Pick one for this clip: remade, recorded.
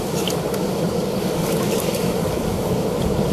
remade